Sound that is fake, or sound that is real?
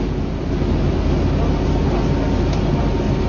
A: real